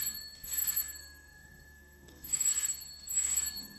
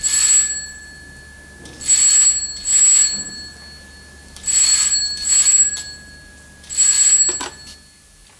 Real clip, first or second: second